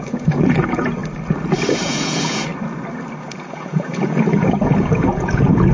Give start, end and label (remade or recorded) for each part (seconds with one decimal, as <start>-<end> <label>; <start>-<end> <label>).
0.0-1.0 remade; 1.0-1.8 recorded; 1.8-2.5 remade; 2.5-3.2 recorded; 3.2-5.7 remade